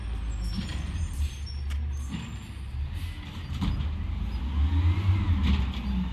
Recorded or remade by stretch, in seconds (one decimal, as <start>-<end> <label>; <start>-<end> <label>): 0.0-0.7 recorded; 0.7-4.4 remade; 4.4-6.1 recorded